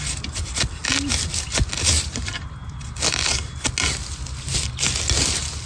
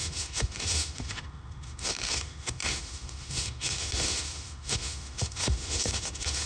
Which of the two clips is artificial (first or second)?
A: second